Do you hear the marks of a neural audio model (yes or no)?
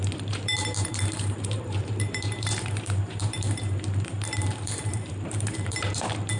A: yes